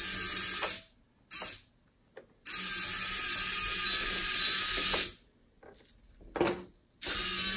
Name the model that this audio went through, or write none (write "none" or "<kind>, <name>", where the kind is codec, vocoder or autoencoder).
none